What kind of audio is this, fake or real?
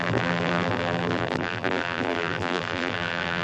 fake